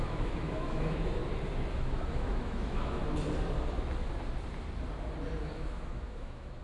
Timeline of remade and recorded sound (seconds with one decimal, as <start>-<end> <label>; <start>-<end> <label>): 0.0-1.2 remade; 1.2-1.7 recorded; 1.7-3.0 remade; 3.0-5.5 recorded; 5.5-6.6 remade